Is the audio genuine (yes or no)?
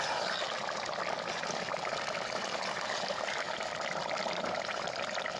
yes